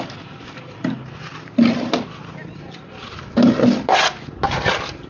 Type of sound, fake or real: real